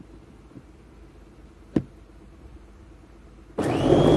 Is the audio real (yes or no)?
yes